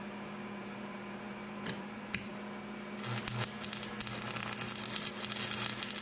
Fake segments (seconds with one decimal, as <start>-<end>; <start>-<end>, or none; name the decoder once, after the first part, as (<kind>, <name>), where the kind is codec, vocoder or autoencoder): 0.6-2.3 (vocoder, BigVGAN v2)